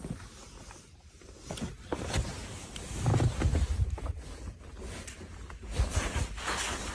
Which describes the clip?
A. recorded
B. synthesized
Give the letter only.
A